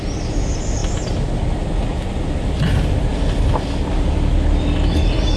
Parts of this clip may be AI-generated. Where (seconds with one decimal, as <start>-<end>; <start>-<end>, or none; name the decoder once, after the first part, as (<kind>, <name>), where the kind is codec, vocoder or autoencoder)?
none